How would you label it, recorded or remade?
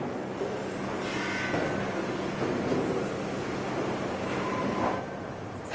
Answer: recorded